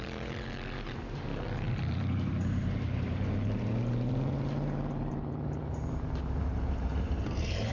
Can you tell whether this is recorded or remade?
remade